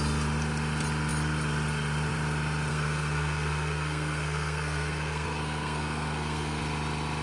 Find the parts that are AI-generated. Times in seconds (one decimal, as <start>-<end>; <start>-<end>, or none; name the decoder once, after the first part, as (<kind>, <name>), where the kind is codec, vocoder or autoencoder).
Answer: 2.7-6.6 (codec, SNAC)